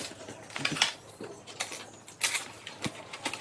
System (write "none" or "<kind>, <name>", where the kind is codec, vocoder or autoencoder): none